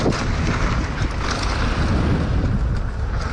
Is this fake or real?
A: real